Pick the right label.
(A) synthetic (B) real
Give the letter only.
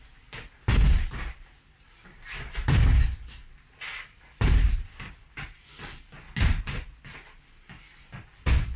B